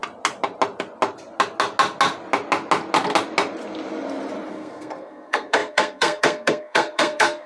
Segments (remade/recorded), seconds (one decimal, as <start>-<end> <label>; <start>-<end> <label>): 0.0-4.5 recorded; 4.5-7.5 remade